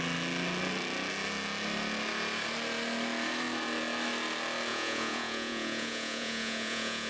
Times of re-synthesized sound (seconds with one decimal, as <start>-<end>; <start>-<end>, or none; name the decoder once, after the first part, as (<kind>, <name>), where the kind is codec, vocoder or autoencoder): 4.7-7.1 (vocoder, Vocos)